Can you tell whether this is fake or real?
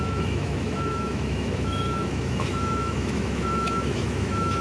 fake